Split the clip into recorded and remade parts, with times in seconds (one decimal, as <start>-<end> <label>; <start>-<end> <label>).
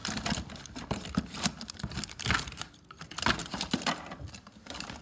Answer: 0.0-3.0 remade; 3.0-3.4 recorded; 3.4-5.0 remade